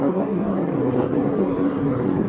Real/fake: fake